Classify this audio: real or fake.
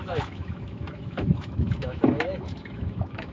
fake